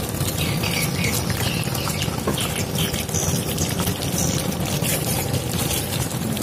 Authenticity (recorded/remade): remade